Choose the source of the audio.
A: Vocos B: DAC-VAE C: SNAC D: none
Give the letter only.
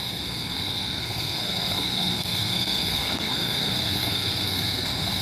C